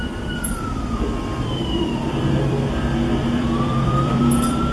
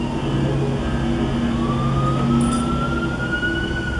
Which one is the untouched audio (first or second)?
second